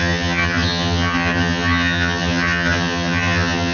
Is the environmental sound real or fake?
fake